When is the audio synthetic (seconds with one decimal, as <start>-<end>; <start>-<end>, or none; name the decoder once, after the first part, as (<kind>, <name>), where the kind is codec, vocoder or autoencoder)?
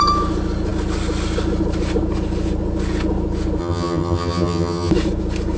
3.6-4.9 (vocoder, HiFi-GAN)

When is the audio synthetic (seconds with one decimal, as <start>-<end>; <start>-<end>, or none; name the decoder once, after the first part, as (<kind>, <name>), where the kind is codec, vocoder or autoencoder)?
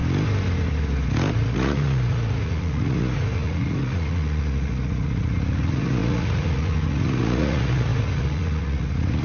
1.3-9.2 (vocoder, Vocos)